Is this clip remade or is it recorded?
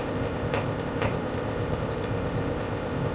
remade